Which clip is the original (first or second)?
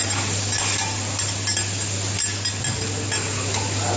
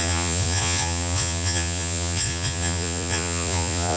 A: first